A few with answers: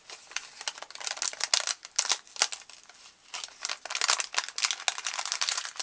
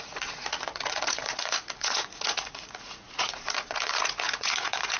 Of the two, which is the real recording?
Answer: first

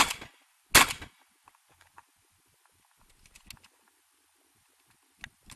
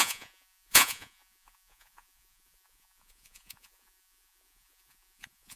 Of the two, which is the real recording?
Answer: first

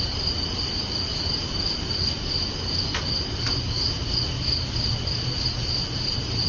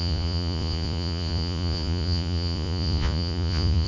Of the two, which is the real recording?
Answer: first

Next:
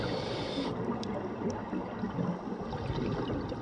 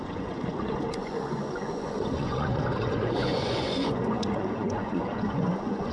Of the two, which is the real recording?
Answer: first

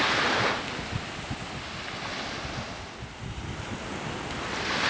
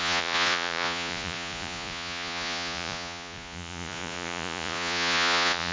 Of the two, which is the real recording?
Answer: first